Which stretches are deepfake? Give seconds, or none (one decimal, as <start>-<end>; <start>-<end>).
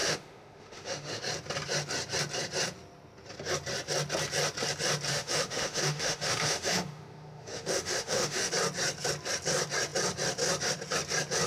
0.0-1.2; 5.1-8.5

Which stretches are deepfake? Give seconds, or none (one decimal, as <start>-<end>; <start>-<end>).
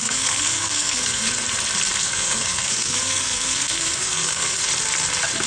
0.0-1.3; 2.0-4.6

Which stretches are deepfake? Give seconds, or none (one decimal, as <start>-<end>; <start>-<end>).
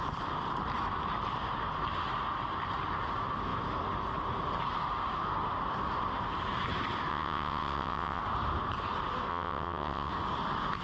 7.1-8.2; 9.3-10.1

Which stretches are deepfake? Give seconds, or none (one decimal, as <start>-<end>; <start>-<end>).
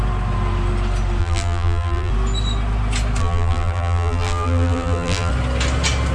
1.2-2.1; 3.2-5.3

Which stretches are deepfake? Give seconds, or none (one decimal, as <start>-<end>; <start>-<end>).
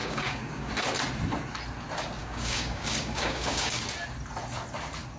0.0-0.7; 2.2-3.8